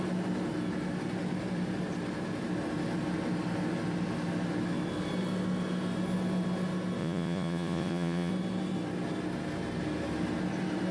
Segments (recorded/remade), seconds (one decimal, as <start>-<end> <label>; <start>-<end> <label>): 0.0-7.0 recorded; 7.0-8.3 remade; 8.3-10.9 recorded